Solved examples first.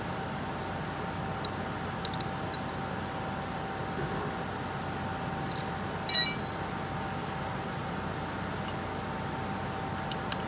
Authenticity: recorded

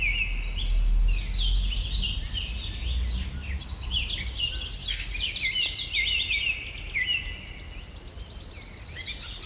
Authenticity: recorded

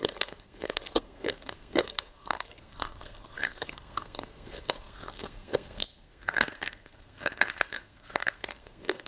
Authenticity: remade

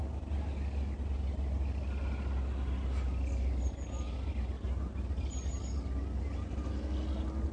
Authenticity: recorded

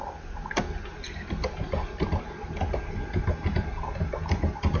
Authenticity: recorded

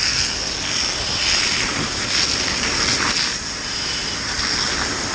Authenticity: recorded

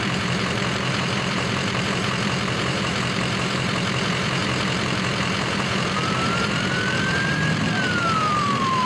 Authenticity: remade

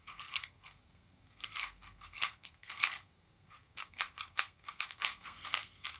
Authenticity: remade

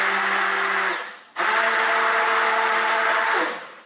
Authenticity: recorded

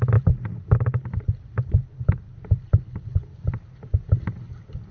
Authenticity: recorded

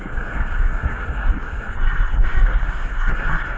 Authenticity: remade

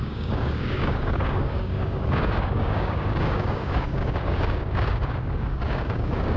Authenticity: remade